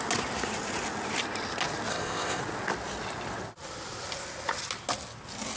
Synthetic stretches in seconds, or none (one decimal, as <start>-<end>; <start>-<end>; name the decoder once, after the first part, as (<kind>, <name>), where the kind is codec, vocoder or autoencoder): 1.9-2.4 (codec, ZipCodec)